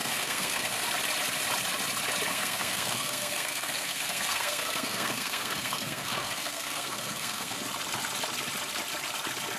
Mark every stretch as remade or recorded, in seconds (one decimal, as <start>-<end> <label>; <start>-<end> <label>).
0.0-0.8 remade; 0.8-2.3 recorded; 2.3-7.6 remade; 7.6-9.6 recorded